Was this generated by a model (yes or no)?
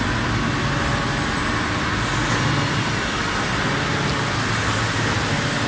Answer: no